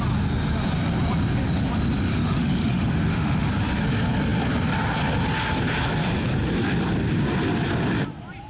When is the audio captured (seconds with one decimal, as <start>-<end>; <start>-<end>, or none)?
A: 0.0-2.1; 3.5-8.5